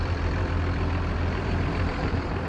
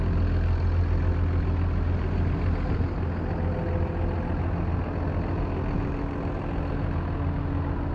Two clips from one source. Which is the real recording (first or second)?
second